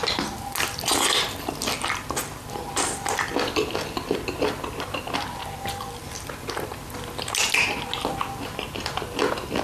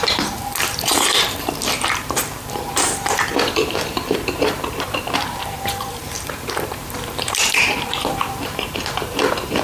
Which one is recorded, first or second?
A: first